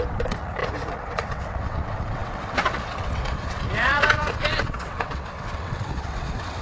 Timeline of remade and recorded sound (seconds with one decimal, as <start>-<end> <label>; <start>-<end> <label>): 0.0-6.6 remade